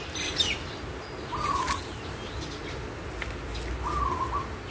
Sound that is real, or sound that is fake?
real